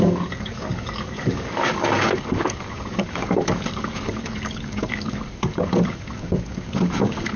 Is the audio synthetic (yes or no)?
yes